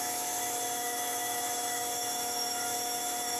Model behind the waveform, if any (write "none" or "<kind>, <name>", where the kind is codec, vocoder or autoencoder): autoencoder, DAC-VAE